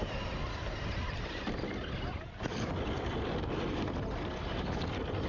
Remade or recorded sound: recorded